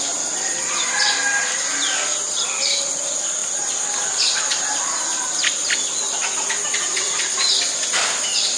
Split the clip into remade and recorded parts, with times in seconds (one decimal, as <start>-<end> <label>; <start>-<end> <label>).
0.0-8.6 recorded